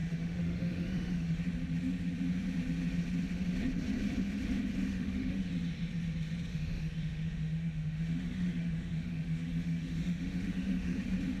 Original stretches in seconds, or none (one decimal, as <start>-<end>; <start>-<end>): 1.4-4.9; 5.5-6.5; 11.0-11.4

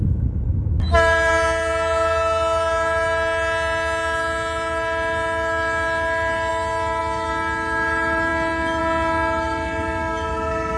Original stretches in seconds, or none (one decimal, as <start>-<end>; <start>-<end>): 0.0-10.8

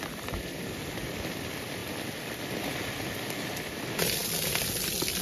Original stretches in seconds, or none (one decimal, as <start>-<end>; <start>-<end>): 1.8-2.6; 4.2-5.2

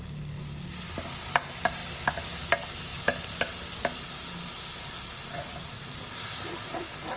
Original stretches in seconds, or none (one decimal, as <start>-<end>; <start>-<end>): 0.0-7.2

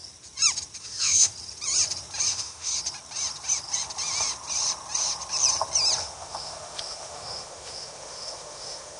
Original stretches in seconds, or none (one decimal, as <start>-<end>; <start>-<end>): 0.0-0.8; 1.3-2.3; 2.7-6.0

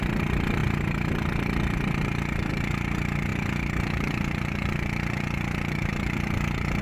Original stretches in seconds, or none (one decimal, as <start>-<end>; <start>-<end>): 0.0-6.8

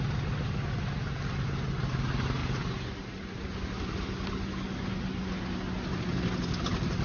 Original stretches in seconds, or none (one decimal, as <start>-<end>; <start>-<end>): 0.0-7.0

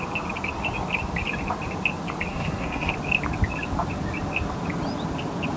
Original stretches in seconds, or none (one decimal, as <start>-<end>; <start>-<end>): 0.0-2.3; 2.9-5.6